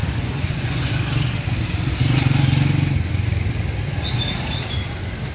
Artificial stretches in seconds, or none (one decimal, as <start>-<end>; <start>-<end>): 0.0-0.9